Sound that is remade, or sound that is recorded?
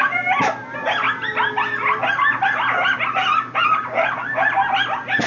recorded